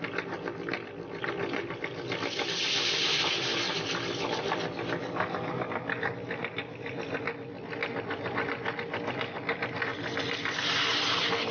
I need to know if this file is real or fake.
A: real